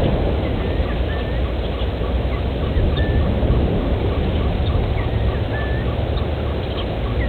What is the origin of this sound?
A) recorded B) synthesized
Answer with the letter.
A